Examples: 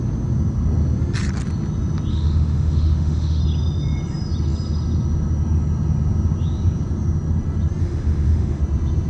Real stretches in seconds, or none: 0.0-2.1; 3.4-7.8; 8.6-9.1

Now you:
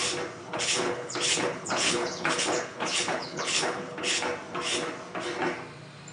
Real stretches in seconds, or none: 0.0-0.5; 4.2-6.1